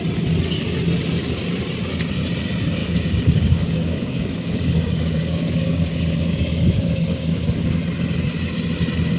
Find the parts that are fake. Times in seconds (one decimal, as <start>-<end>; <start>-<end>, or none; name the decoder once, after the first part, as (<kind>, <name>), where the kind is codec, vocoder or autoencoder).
2.8-7.8 (codec, DAC)